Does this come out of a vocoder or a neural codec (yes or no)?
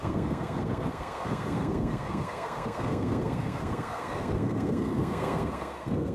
yes